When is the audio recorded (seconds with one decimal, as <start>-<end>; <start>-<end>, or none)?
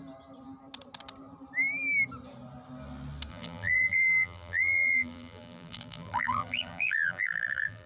0.0-3.3